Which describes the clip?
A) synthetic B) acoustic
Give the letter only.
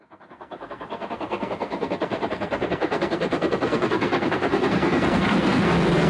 A